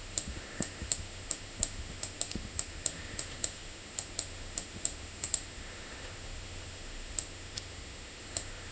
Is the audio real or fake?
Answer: fake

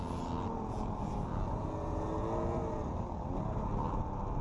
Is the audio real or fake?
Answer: real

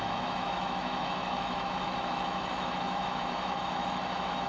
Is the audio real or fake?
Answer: fake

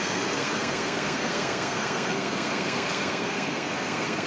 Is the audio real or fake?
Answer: fake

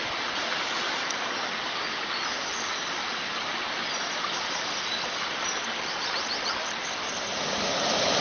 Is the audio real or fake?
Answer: real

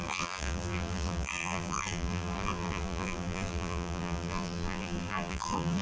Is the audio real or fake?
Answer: fake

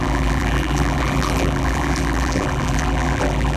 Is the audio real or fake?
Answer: fake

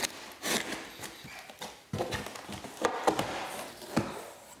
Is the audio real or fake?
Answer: real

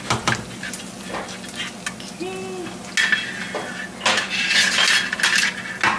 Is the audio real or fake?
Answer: real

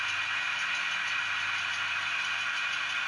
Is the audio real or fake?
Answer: real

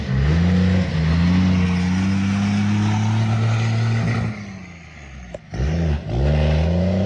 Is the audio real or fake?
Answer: real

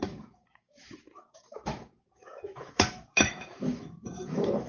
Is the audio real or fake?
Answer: fake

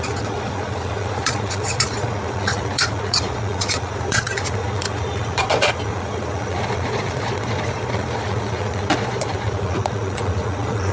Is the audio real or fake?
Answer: fake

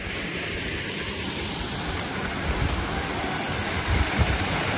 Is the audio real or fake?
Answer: real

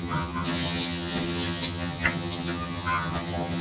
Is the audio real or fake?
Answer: fake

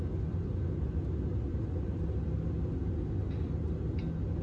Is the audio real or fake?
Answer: real